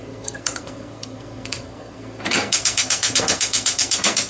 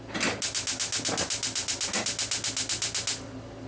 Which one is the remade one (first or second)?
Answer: first